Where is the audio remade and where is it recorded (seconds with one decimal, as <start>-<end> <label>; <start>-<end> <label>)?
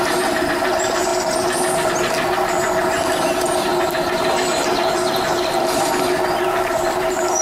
0.0-7.4 recorded